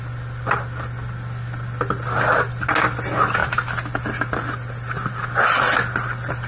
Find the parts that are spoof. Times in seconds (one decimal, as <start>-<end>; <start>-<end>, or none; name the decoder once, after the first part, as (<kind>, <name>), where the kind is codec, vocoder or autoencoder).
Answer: none